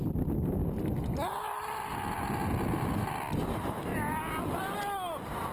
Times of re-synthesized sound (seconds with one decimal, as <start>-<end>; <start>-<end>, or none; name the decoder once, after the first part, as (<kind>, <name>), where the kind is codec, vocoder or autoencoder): none